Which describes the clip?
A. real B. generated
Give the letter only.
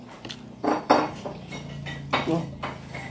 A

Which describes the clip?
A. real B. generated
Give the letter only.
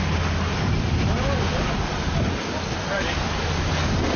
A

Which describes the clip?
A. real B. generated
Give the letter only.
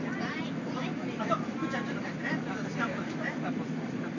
A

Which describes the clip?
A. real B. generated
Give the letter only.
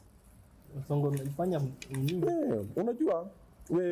A